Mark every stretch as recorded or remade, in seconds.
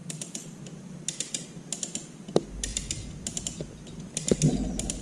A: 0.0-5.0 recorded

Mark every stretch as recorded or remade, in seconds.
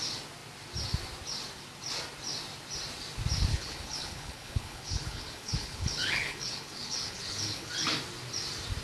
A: 0.0-3.5 recorded; 3.5-7.7 remade; 7.7-8.8 recorded